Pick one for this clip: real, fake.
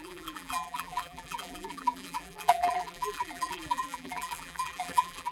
fake